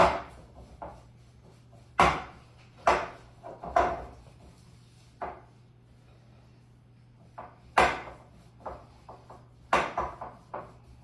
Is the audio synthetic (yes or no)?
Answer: no